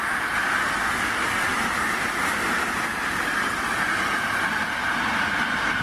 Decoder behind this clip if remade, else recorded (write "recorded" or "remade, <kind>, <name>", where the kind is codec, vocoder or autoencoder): recorded